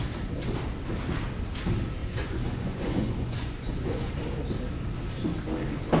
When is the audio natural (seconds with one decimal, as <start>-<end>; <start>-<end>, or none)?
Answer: 0.0-2.0; 4.1-6.0